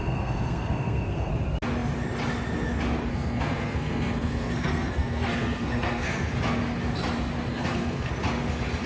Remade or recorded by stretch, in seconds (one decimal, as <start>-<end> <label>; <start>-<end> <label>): 0.0-1.3 remade; 1.3-3.1 recorded; 3.1-6.3 remade; 6.3-7.5 recorded; 7.5-8.1 remade; 8.1-8.9 recorded